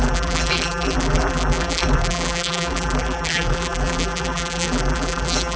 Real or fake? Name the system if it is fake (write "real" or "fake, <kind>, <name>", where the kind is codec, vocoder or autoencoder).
fake, vocoder, BigVGAN v2